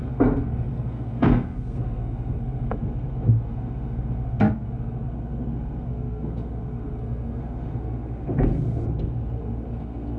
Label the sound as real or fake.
fake